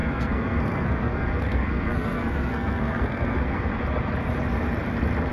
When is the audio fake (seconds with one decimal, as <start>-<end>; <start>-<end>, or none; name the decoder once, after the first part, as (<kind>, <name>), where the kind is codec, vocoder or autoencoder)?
0.0-3.7 (codec, SNAC)